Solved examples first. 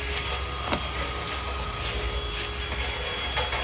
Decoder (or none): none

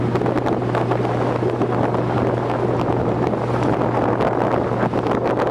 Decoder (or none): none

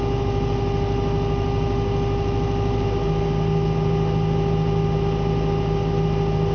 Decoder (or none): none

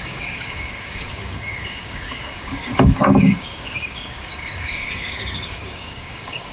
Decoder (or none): codec, DAC